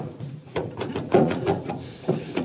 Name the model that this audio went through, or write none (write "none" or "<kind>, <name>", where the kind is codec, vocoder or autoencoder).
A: vocoder, Vocos